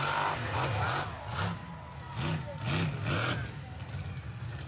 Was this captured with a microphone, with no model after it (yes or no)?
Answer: yes